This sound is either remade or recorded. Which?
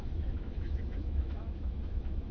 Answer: remade